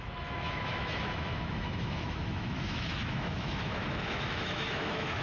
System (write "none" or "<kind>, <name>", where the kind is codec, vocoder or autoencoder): autoencoder, DAC-VAE